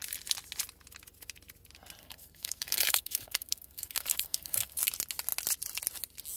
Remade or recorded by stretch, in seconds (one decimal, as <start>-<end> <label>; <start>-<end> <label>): 0.0-2.0 recorded; 2.0-4.8 remade; 4.8-6.4 recorded